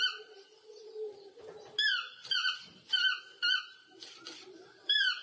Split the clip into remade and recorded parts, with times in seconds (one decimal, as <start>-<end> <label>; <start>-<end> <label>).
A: 0.0-0.8 recorded; 0.8-1.4 remade; 1.4-2.0 recorded; 2.0-5.2 remade